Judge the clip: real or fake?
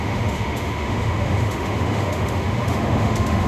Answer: fake